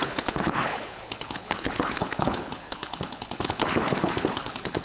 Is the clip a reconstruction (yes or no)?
yes